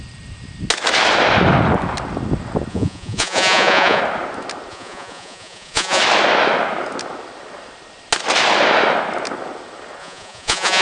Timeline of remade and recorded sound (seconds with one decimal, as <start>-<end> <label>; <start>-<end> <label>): 0.0-2.7 recorded; 2.7-4.0 remade; 4.0-4.7 recorded; 4.7-6.0 remade; 6.0-10.0 recorded; 10.0-10.8 remade